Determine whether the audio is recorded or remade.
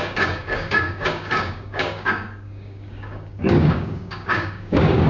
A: remade